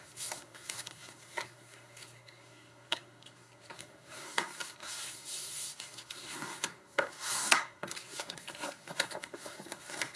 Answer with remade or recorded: remade